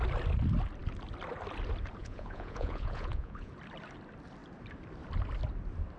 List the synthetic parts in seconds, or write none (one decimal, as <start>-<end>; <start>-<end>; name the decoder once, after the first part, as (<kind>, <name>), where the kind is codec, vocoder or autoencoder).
2.0-3.5 (vocoder, Vocos)